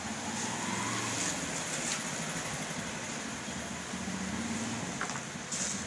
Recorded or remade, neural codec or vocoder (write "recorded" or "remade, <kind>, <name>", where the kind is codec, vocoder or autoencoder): recorded